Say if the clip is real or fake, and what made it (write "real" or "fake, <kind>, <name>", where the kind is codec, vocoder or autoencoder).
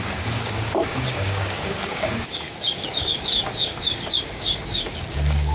fake, codec, DAC